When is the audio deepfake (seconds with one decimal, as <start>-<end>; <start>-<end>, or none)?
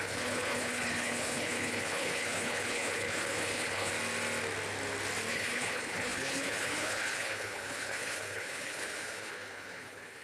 0.0-3.9; 5.3-10.2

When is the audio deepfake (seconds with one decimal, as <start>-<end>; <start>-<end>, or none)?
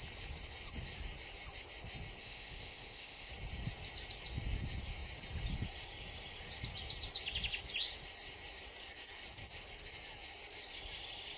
2.2-3.3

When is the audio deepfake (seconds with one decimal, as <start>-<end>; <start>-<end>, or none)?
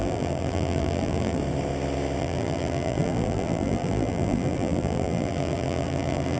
0.0-1.4; 2.2-6.4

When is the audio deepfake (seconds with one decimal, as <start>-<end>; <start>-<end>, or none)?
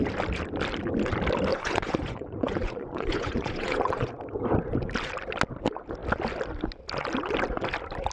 1.5-4.1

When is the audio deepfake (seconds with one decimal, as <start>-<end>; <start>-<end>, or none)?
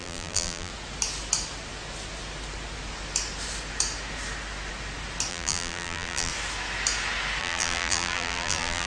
0.0-0.7; 5.3-6.3; 7.4-8.9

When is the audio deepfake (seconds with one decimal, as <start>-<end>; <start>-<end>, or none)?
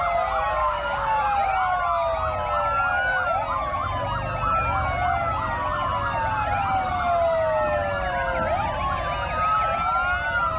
0.6-1.2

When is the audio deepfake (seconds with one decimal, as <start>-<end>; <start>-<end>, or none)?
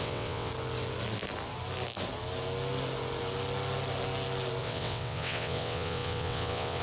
0.0-0.5; 4.6-6.8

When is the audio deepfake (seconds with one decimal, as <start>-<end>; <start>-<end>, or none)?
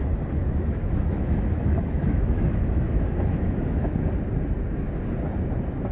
0.4-3.9